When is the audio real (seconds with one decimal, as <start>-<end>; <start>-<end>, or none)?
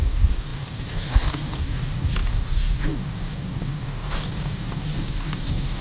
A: none